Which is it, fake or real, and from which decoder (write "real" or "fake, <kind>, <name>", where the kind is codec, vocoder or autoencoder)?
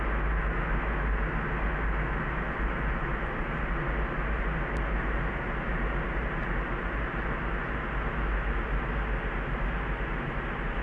real